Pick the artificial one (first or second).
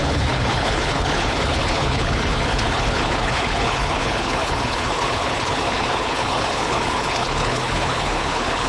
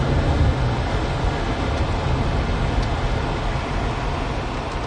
first